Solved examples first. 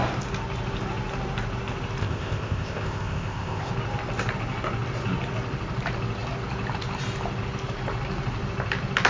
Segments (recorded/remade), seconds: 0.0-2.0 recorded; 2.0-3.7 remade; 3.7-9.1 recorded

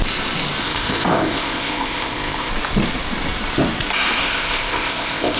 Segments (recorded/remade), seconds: 0.0-0.6 recorded; 0.6-2.5 remade; 2.5-4.2 recorded; 4.2-5.4 remade